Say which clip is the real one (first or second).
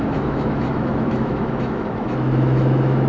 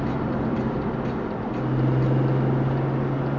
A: second